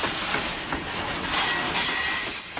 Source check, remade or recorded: recorded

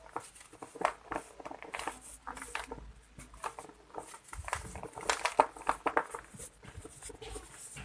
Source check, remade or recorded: recorded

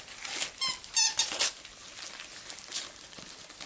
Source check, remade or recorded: recorded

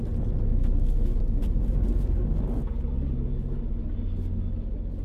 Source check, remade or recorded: recorded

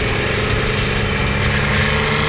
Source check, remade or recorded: recorded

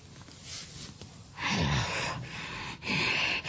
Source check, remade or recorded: recorded